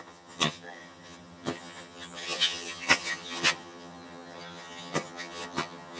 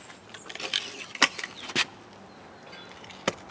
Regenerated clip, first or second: first